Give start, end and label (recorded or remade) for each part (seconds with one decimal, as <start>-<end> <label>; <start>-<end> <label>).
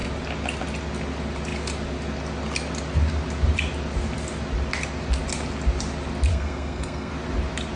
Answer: 0.0-6.3 recorded; 6.3-7.1 remade; 7.1-7.8 recorded